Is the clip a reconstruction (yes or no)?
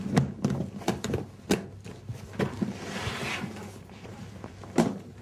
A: no